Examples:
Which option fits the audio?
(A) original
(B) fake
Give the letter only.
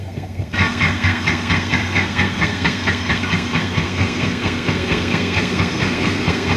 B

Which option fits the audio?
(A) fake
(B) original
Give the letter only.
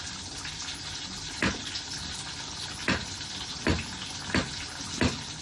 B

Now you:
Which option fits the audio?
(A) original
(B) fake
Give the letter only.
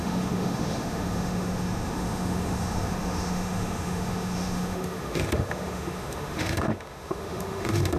B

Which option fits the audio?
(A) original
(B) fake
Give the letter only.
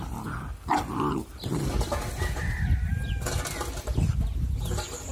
A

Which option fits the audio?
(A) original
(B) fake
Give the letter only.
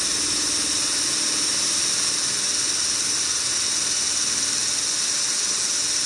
A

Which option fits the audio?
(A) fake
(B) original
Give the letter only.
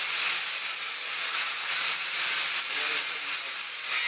B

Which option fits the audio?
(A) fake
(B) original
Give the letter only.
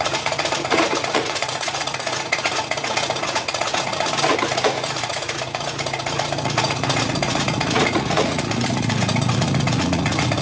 A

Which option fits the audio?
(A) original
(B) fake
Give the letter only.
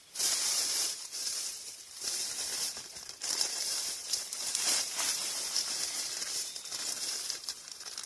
B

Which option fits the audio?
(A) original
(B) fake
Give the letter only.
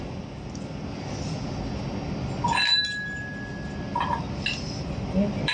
A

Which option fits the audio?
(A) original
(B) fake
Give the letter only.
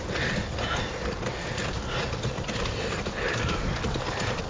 A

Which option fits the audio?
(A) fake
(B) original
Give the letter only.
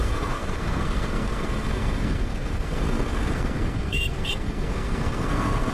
A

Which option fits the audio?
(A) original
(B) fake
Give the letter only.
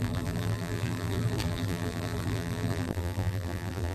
B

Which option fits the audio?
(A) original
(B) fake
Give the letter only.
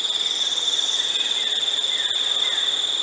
A